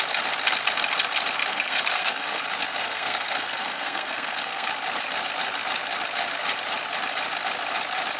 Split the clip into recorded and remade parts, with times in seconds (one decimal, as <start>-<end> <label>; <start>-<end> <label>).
0.0-1.5 recorded; 1.5-2.4 remade; 2.4-2.8 recorded; 2.8-4.7 remade; 4.7-8.2 recorded